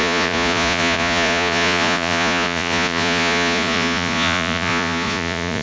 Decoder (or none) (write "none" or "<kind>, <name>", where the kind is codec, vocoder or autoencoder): vocoder, Vocos